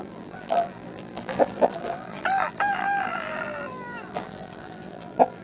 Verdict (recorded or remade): remade